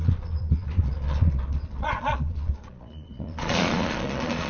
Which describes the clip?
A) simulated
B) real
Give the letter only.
A